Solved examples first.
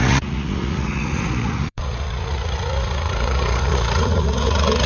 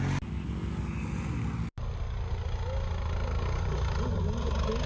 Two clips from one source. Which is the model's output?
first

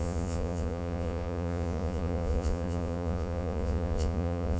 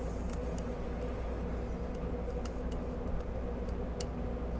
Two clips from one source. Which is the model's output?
first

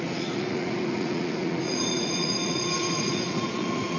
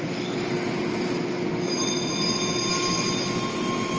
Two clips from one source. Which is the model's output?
first